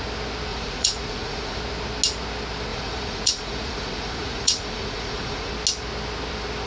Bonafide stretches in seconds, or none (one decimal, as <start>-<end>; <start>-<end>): 0.0-0.5; 1.6-2.7; 5.5-6.7